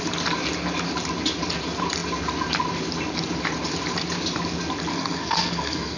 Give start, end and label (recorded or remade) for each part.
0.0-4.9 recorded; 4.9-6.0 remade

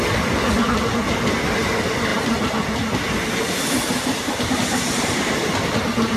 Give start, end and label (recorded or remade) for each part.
0.0-2.1 recorded; 2.1-5.8 remade; 5.8-6.2 recorded

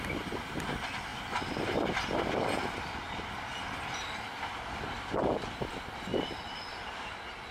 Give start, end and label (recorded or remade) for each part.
0.0-7.5 recorded

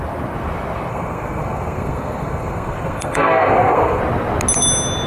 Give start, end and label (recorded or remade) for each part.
0.0-0.9 recorded; 0.9-4.0 remade; 4.0-5.1 recorded

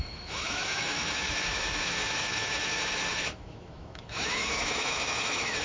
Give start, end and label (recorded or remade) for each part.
0.0-5.6 remade